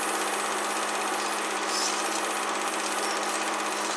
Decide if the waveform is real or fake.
real